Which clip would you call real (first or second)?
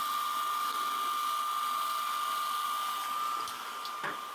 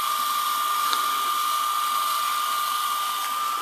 first